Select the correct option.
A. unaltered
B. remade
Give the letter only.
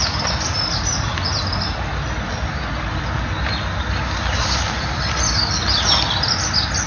A